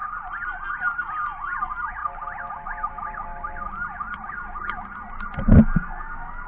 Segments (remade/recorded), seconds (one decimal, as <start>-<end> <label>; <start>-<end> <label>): 0.0-3.3 recorded; 3.3-4.3 remade; 4.3-6.5 recorded